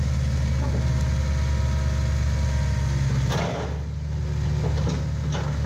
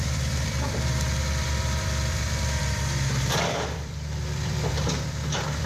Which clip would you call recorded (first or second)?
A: first